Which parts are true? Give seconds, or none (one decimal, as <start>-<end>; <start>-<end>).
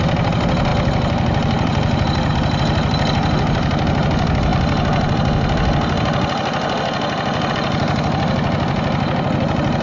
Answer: 0.0-0.7; 2.3-9.8